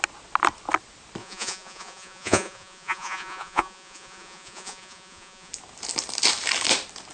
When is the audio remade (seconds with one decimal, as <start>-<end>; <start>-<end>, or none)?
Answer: 1.2-5.5